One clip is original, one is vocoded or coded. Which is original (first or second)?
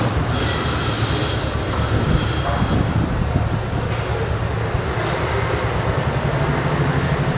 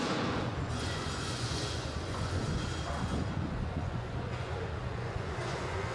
first